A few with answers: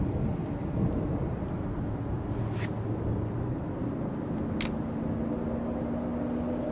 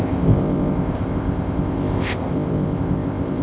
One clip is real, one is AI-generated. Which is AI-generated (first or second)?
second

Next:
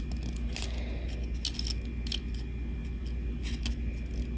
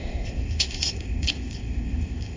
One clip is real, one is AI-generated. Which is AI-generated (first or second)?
second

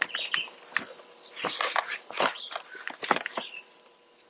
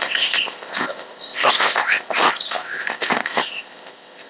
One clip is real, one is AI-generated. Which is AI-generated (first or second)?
second